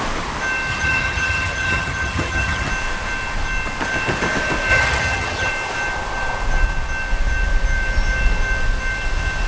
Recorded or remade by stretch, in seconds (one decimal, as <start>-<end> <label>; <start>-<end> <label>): 0.0-0.7 recorded; 0.7-2.7 remade; 2.7-4.7 recorded; 4.7-5.5 remade; 5.5-9.5 recorded